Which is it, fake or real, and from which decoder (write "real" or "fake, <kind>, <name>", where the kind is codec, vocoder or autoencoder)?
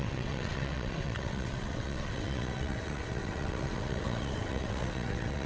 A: fake, vocoder, WaveNeXt